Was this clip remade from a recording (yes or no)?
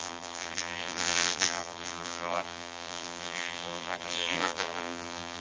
yes